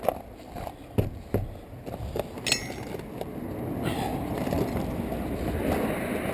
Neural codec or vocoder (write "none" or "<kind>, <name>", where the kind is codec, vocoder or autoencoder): none